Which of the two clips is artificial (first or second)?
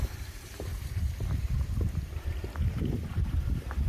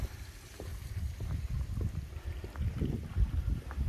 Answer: first